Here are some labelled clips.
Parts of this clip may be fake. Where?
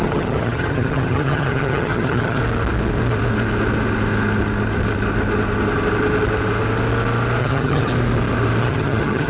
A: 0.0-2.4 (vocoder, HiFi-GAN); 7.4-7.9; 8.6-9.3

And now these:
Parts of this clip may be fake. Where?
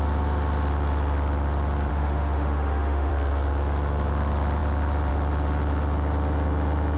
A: 1.9-3.1 (autoencoder, DAC-VAE)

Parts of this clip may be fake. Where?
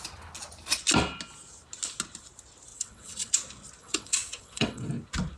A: 2.7-3.3 (vocoder, WaveNeXt); 3.8-4.9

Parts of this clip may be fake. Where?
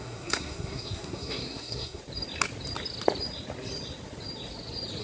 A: 0.0-2.0 (codec, SNAC)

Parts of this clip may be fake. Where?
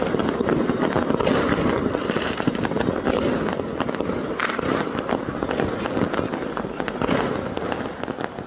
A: 2.0-3.0 (vocoder, BigVGAN v2)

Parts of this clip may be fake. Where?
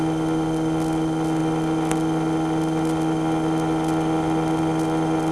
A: none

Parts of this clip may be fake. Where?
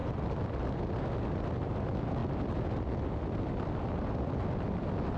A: none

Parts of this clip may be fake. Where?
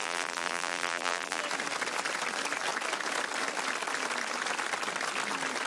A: 0.0-1.4 (vocoder, BigVGAN v2)